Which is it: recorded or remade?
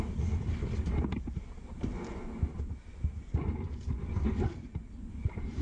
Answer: recorded